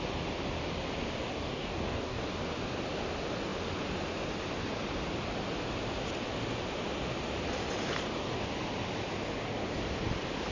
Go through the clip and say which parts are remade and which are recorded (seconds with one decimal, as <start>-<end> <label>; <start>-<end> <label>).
0.0-1.3 recorded; 1.3-2.2 remade; 2.2-10.5 recorded